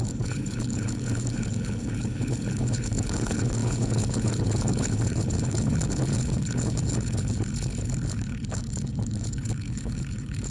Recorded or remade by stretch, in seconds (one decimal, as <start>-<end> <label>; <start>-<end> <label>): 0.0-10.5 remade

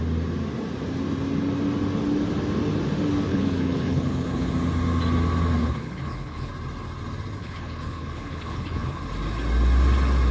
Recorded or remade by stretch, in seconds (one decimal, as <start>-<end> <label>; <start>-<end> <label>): 0.0-3.3 recorded; 3.3-4.5 remade; 4.5-5.6 recorded; 5.6-6.5 remade; 6.5-7.4 recorded; 7.4-9.0 remade; 9.0-10.3 recorded

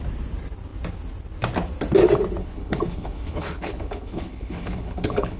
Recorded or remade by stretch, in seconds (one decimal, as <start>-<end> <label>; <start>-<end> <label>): 0.0-2.4 recorded; 2.4-5.4 remade

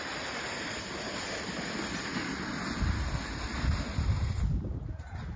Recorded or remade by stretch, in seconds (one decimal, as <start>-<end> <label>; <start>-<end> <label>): 0.0-5.4 recorded